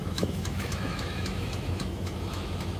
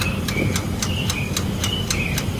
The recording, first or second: second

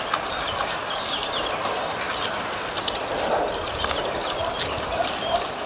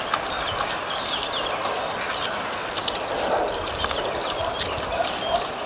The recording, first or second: second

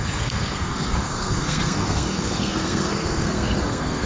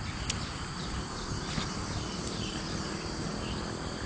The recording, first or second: second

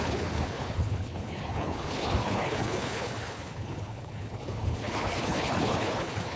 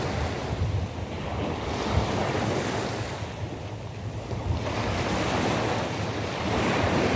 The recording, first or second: second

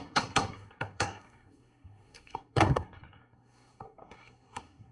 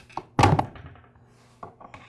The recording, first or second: second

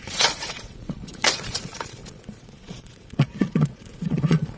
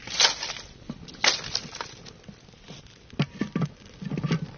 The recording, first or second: second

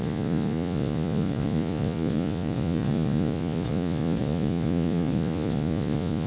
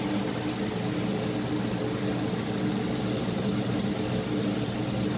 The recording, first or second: second